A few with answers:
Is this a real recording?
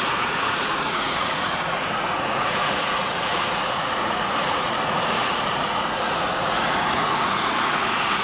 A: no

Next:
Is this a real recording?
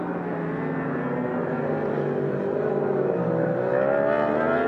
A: yes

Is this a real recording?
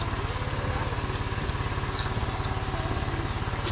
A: yes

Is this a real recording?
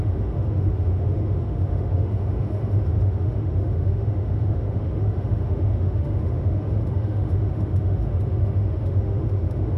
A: no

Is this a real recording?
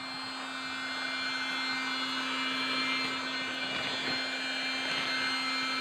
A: yes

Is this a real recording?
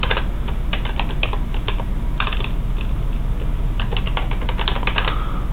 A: yes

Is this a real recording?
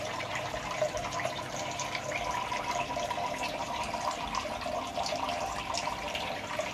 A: no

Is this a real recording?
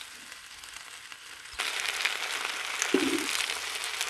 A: yes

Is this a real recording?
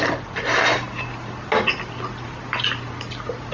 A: yes